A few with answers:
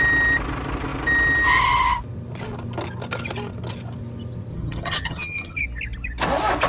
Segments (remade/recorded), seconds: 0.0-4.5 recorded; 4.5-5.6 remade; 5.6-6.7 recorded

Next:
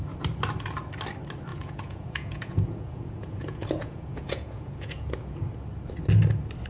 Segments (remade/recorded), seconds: 0.0-1.5 recorded; 1.5-5.5 remade; 5.5-6.7 recorded

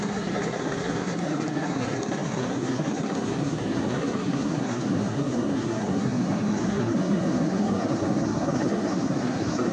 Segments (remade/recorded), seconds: 0.0-9.7 remade

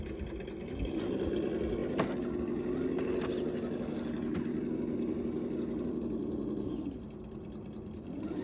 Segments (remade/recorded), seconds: 0.0-8.4 recorded

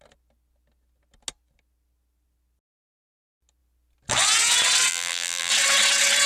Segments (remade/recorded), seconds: 0.0-4.9 recorded; 4.9-5.5 remade; 5.5-6.3 recorded

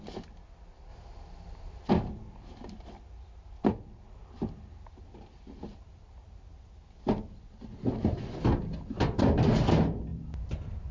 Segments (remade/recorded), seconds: 0.0-10.1 recorded; 10.1-10.9 remade